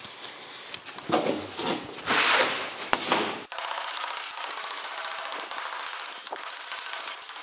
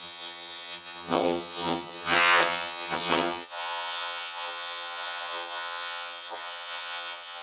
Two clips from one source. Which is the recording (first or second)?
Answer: first